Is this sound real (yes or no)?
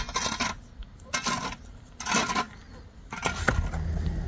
yes